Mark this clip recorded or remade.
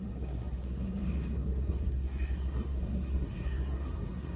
remade